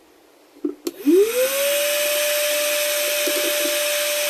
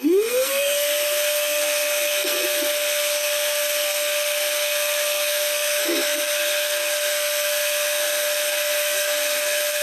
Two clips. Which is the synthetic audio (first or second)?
second